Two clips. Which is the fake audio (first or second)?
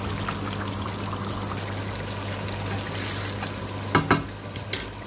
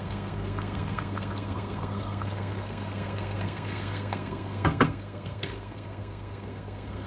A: second